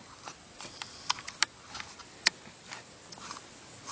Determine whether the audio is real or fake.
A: real